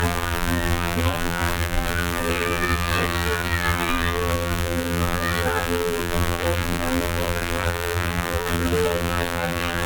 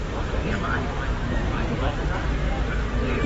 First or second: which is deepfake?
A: first